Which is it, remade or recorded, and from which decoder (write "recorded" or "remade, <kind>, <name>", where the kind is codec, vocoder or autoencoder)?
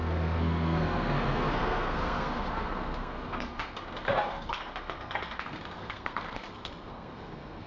remade, codec, SNAC